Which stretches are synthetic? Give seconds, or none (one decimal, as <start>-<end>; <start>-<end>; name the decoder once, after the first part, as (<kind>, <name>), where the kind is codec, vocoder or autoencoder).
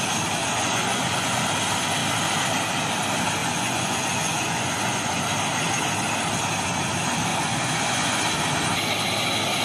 0.4-1.5 (vocoder, Vocos); 3.4-5.2; 7.3-8.2